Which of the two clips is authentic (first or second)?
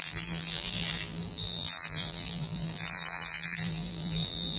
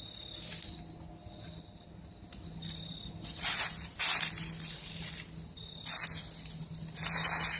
second